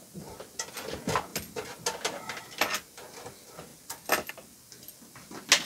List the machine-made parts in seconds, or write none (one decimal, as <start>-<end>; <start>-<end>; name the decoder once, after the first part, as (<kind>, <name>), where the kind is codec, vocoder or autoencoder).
none